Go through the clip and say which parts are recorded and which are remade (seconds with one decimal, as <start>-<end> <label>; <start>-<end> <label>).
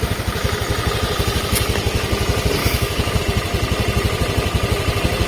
0.0-2.6 recorded; 2.6-3.2 remade; 3.2-5.3 recorded